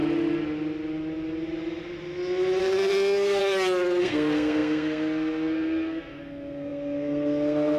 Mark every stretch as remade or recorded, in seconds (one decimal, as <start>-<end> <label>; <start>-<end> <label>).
0.0-2.6 recorded; 2.6-3.4 remade; 3.4-4.0 recorded; 4.0-7.8 remade